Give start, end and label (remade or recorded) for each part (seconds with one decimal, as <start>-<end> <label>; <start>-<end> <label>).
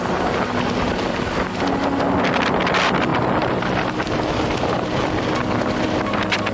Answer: 0.0-6.5 recorded